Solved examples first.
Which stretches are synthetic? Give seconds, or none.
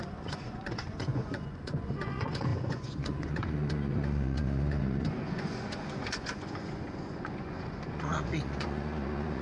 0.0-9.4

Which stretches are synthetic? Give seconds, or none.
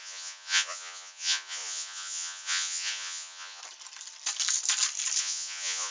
0.0-3.6; 5.2-5.9